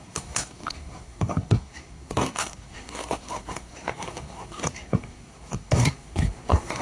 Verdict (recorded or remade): remade